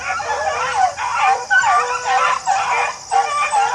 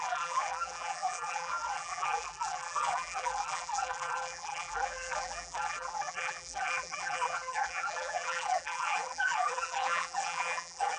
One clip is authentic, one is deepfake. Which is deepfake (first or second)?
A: second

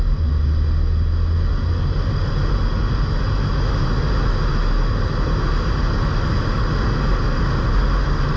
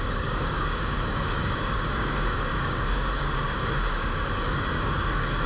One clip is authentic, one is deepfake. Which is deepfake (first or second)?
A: second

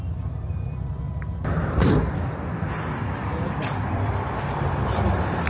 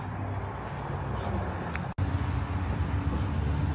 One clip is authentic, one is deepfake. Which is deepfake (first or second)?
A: first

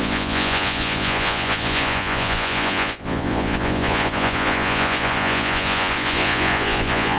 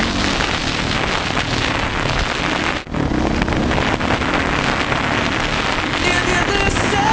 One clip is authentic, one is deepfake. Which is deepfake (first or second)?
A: first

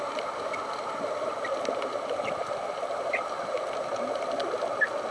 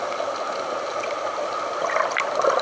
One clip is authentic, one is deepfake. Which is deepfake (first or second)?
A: first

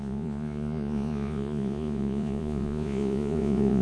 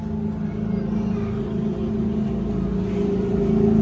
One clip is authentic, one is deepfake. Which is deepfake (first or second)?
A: first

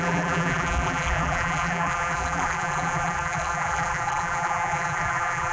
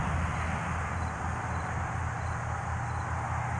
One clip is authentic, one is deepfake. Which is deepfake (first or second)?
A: first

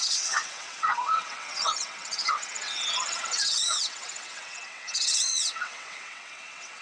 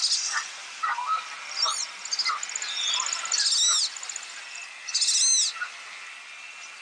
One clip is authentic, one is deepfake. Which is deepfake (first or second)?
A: first